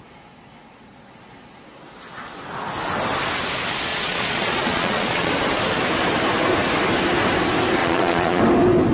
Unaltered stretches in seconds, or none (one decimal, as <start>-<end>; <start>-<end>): 0.0-3.9; 5.3-7.8; 8.4-8.9